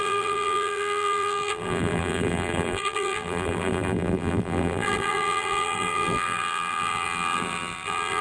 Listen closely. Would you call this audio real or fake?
fake